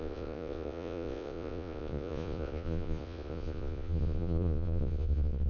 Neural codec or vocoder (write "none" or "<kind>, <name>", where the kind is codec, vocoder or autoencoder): vocoder, Vocos